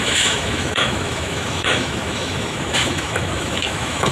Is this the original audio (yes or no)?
no